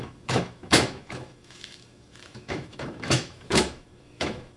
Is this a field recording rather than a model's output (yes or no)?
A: no